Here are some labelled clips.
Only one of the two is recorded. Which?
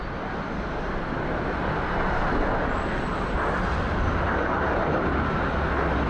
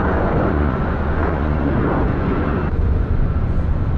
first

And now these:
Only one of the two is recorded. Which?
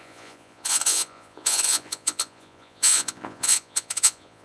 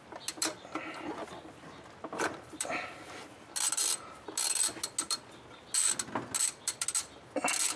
second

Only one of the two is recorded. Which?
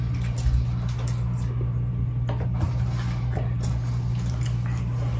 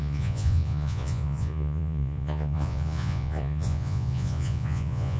first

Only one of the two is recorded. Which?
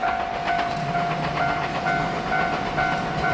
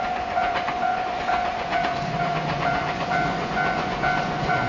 first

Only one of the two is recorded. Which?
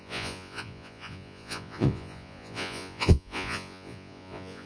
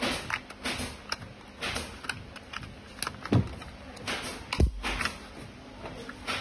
second